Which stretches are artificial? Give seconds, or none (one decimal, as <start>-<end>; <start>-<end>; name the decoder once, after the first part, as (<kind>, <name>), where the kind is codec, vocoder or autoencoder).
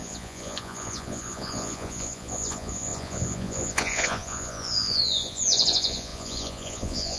0.0-7.2 (vocoder, Vocos)